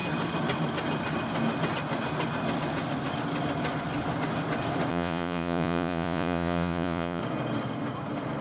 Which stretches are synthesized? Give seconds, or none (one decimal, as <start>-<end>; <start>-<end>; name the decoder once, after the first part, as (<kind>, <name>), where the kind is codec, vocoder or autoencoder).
4.9-7.2 (vocoder, Vocos)